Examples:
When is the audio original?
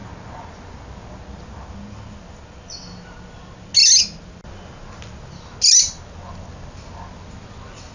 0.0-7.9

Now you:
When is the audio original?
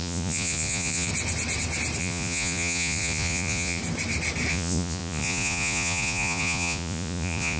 1.1-2.0; 3.8-4.5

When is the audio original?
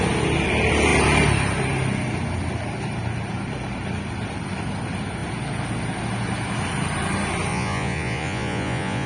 0.0-7.5